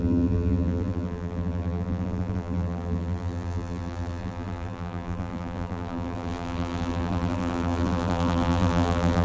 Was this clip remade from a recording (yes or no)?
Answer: yes